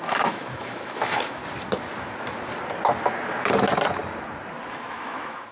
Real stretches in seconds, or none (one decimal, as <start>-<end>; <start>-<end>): 1.4-4.7

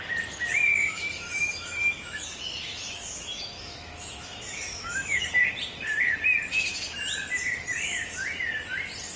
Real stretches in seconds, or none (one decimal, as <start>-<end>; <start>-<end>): 0.0-0.7; 5.3-6.5; 7.0-9.2

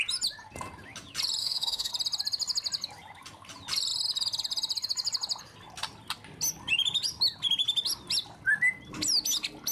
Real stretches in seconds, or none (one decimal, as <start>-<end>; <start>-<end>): 0.0-1.4; 1.9-9.7